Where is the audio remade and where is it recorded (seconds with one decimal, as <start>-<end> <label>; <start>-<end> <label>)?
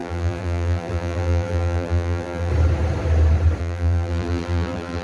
0.0-2.5 remade; 2.5-3.6 recorded; 3.6-5.0 remade